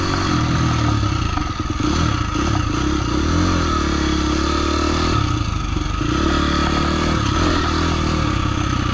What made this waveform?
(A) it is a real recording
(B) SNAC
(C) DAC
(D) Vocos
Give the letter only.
A